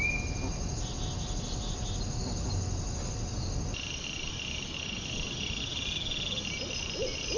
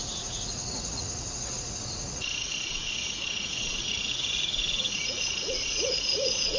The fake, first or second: second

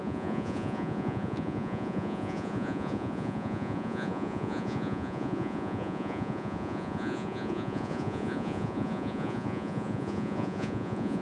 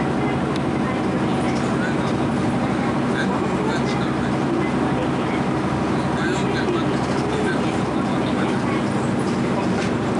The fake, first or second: first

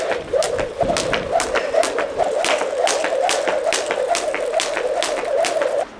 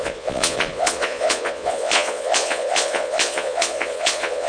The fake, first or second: second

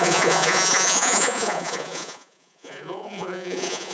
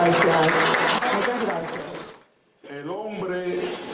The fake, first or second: first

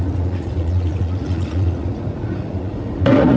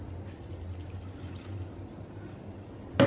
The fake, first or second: first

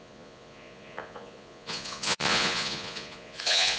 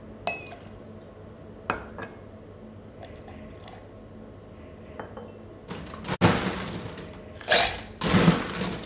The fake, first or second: first